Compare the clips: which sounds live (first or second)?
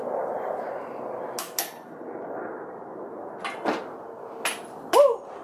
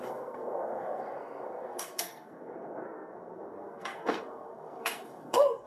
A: first